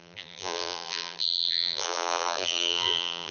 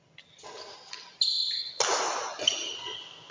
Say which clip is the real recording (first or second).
second